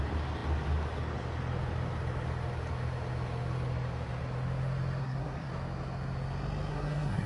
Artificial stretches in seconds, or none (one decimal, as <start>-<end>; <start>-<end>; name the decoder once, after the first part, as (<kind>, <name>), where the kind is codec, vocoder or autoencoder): 5.0-5.5 (codec, SNAC); 6.7-7.3